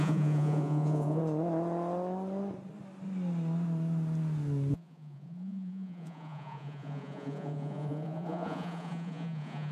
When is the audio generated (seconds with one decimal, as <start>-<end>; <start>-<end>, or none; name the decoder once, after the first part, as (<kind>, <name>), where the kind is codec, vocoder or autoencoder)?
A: 0.0-1.2 (vocoder, Vocos); 4.7-9.7